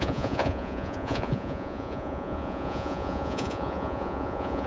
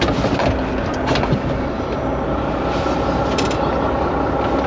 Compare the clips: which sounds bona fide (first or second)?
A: second